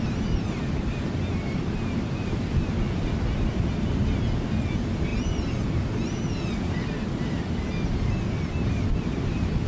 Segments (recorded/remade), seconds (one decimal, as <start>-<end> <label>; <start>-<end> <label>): 0.0-9.7 recorded